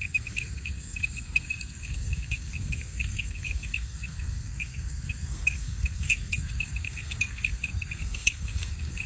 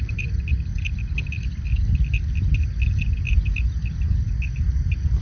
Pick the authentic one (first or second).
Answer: second